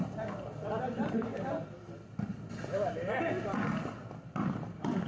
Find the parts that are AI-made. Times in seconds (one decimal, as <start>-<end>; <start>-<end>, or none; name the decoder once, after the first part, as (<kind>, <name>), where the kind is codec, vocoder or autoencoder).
none